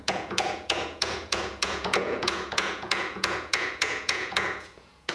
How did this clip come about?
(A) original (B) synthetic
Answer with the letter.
B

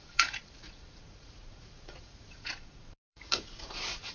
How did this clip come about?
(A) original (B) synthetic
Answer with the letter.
B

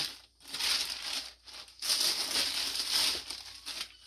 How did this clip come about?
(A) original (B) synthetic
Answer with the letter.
A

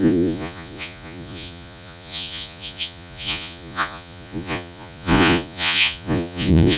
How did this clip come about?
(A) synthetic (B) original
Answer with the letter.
A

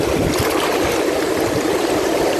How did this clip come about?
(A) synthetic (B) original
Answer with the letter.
B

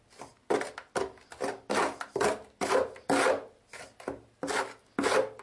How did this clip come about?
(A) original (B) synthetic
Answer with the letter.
A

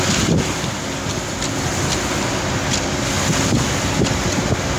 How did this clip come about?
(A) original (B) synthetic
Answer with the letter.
A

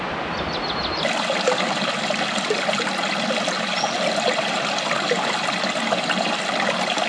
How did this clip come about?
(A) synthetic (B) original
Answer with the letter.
B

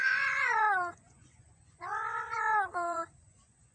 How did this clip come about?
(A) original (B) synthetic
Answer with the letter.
B